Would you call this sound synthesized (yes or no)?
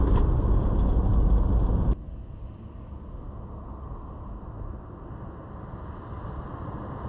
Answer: no